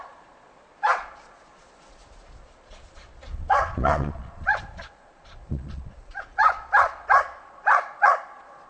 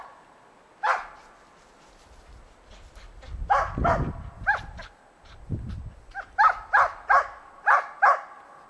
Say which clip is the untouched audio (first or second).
second